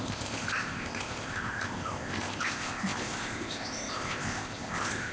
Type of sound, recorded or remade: remade